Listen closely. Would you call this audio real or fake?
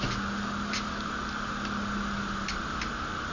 real